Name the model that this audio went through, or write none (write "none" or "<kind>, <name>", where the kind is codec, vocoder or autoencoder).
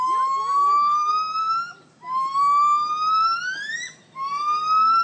none